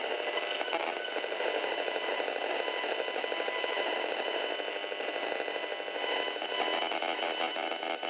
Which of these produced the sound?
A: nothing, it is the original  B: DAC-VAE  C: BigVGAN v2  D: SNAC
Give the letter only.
A